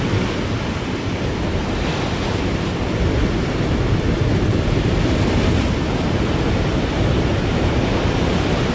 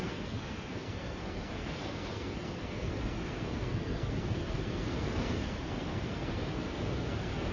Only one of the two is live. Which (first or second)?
first